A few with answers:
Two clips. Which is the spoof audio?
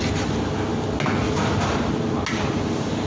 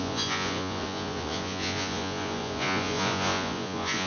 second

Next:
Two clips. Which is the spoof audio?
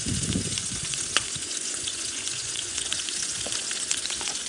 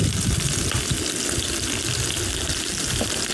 first